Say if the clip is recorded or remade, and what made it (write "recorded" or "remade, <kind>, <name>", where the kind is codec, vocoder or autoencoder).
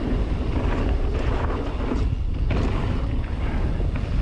recorded